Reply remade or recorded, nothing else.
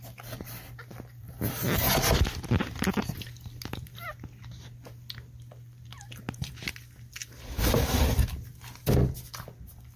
recorded